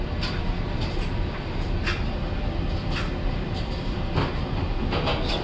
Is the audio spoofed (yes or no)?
no